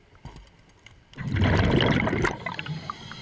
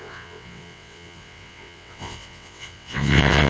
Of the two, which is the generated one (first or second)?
second